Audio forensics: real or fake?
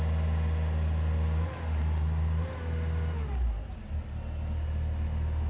real